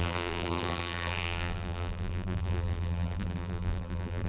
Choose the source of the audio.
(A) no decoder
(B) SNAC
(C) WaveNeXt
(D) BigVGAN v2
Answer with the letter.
D